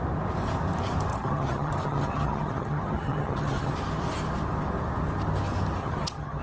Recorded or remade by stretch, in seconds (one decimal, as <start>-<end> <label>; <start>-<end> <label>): 0.0-1.1 recorded; 1.1-3.7 remade; 3.7-5.8 recorded; 5.8-6.4 remade